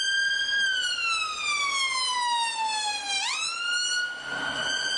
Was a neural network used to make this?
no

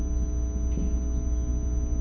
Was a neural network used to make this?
no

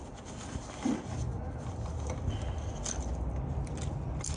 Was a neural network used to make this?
no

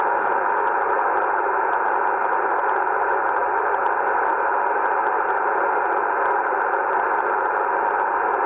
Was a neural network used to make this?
no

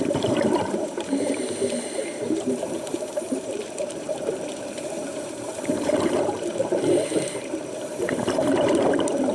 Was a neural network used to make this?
yes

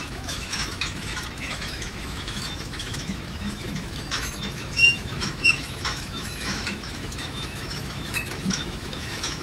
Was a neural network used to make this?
yes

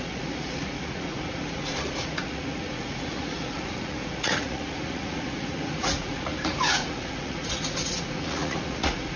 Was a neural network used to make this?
yes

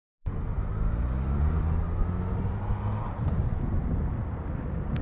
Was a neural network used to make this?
no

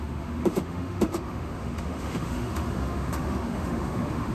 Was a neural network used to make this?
yes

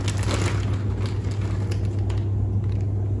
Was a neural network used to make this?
no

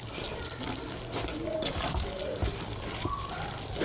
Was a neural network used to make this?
yes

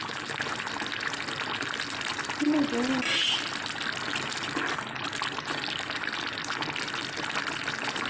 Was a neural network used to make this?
no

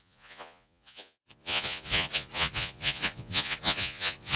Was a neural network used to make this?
yes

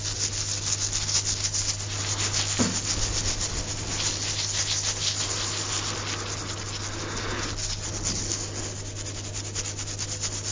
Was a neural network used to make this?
no